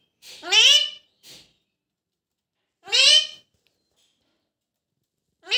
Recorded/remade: recorded